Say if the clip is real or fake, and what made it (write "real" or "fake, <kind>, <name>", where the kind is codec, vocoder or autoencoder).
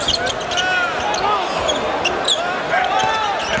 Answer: real